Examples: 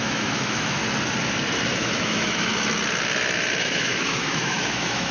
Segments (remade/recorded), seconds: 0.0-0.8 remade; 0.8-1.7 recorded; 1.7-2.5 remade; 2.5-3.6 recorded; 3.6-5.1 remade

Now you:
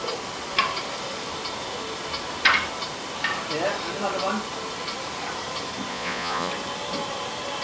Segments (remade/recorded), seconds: 0.0-5.9 recorded; 5.9-6.5 remade; 6.5-7.6 recorded

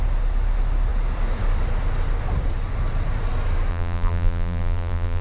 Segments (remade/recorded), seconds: 0.0-3.7 recorded; 3.7-5.2 remade